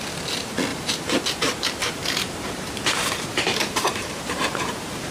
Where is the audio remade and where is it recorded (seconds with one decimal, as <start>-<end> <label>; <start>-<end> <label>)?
0.0-0.7 recorded; 0.7-1.2 remade; 1.2-1.8 recorded; 1.8-5.1 remade